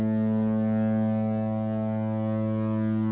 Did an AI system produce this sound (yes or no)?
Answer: no